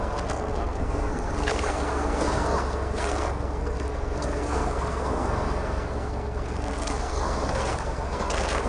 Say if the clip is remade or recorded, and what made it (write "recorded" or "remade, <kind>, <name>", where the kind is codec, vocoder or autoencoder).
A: remade, codec, SNAC